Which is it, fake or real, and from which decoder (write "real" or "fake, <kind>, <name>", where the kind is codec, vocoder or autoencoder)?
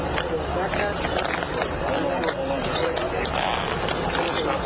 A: real